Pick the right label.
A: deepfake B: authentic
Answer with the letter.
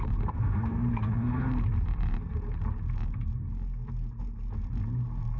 A